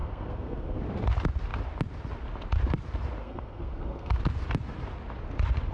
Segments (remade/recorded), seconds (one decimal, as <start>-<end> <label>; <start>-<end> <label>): 0.0-0.8 remade; 0.8-3.2 recorded; 3.2-4.2 remade; 4.2-5.7 recorded